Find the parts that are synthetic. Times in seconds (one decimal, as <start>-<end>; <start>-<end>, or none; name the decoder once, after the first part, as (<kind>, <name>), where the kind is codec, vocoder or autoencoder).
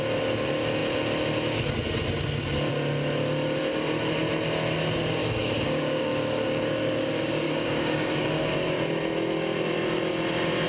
5.2-8.5 (codec, DAC)